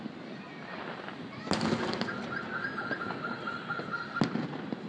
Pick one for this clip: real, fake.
real